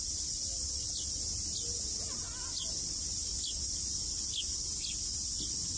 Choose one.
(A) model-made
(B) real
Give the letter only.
B